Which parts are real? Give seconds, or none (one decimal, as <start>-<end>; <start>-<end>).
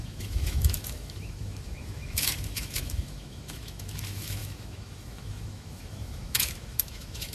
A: none